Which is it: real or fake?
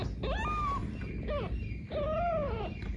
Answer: real